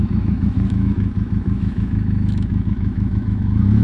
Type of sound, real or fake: fake